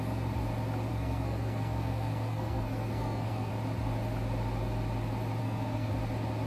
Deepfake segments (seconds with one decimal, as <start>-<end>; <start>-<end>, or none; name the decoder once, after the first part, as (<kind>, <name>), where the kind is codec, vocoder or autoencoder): 0.9-3.5 (codec, SNAC); 5.4-5.9